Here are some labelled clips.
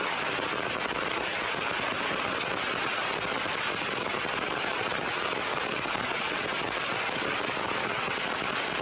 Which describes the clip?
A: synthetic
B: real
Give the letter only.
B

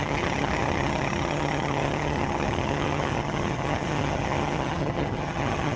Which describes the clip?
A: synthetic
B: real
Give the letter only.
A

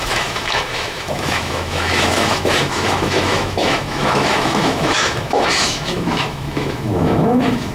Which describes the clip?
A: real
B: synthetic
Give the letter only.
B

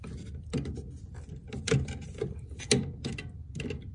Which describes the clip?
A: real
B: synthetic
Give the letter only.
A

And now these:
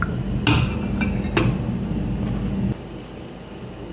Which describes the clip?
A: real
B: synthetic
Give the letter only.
A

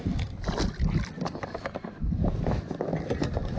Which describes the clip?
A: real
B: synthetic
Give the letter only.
A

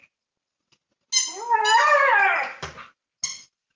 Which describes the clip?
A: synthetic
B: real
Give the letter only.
B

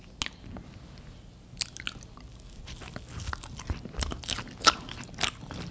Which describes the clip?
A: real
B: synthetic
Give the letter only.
A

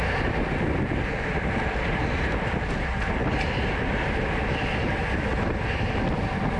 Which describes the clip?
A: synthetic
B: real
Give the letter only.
B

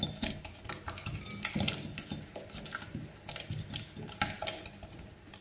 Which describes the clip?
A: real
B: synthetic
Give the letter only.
A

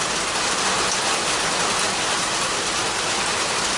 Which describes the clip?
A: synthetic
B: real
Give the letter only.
B